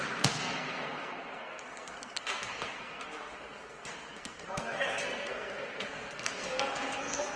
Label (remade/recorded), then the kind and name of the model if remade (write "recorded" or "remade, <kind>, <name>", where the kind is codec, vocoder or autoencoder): remade, codec, SNAC